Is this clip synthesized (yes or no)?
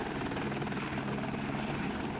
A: no